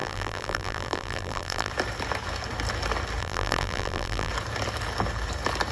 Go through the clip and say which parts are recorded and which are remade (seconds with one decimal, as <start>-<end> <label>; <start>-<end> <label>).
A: 0.0-1.7 remade; 1.7-3.2 recorded; 3.2-4.3 remade; 4.3-5.7 recorded